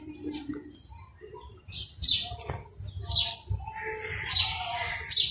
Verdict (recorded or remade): recorded